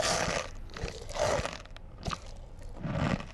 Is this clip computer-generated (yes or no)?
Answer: no